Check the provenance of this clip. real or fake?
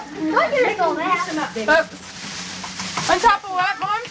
fake